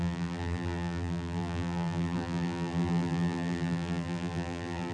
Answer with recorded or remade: remade